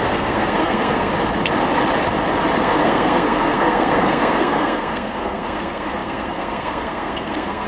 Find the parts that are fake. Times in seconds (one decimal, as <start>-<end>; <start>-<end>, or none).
0.0-1.1; 2.6-7.7